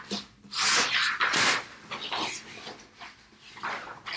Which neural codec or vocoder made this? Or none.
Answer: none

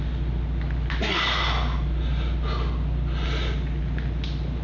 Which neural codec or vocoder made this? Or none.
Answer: none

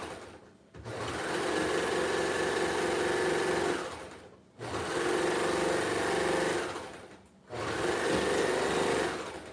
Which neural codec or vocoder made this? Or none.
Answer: none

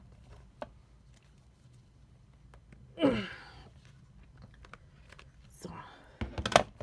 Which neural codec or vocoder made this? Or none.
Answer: none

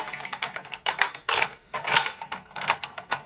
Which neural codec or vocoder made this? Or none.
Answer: codec, SNAC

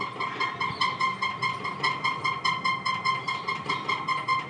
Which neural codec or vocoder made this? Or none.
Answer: none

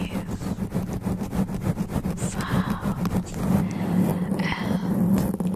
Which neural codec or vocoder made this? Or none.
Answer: none